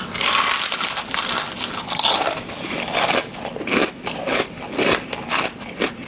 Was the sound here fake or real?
real